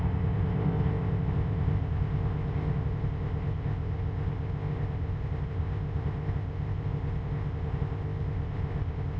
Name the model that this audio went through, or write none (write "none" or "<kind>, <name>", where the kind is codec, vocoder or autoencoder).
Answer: codec, ZipCodec